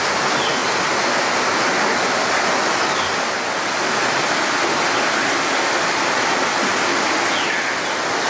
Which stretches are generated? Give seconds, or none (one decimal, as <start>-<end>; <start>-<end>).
none